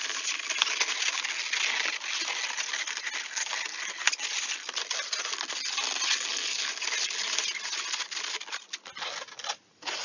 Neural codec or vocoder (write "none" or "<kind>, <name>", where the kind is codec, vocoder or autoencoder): none